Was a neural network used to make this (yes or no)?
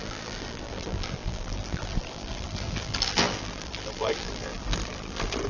yes